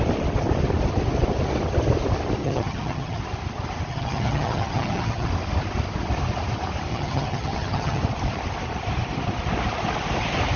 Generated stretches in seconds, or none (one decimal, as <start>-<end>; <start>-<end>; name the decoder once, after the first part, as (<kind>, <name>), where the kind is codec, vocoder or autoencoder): 2.4-3.2 (vocoder, HiFi-GAN); 3.9-5.3; 6.9-8.0